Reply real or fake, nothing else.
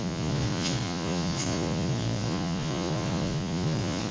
fake